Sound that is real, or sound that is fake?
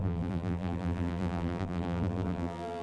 fake